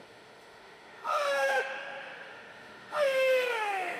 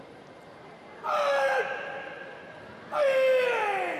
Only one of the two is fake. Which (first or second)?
first